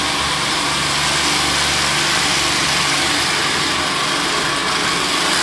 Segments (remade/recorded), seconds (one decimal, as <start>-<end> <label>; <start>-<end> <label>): 0.0-5.4 recorded